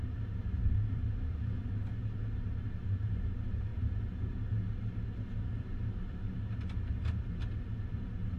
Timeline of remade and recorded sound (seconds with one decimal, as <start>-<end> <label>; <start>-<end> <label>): 0.0-3.7 remade; 3.7-5.4 recorded; 5.4-8.4 remade